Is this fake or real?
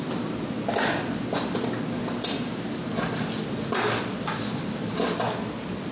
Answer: real